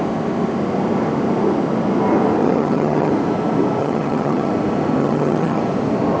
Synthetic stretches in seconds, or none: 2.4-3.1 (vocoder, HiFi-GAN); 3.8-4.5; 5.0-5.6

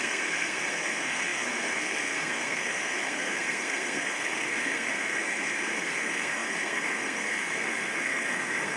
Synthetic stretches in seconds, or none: 0.0-8.8 (codec, SNAC)

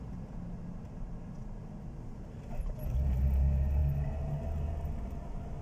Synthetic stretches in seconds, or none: none

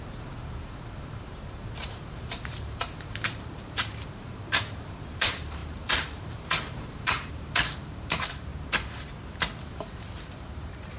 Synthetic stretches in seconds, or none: 0.0-8.5 (vocoder, BigVGAN v2); 9.6-11.0